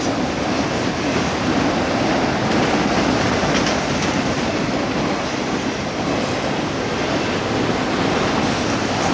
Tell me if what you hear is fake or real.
real